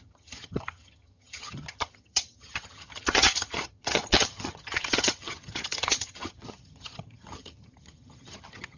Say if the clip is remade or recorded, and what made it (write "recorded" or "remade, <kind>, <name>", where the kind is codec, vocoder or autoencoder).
remade, vocoder, HiFi-GAN